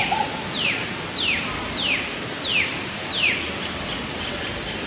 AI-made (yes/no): no